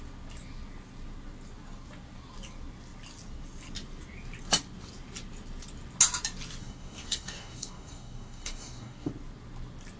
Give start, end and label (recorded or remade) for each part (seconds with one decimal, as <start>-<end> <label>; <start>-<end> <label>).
0.0-6.6 recorded; 6.6-9.1 remade; 9.1-10.0 recorded